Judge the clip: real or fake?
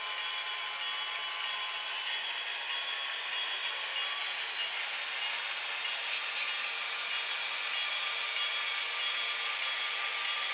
real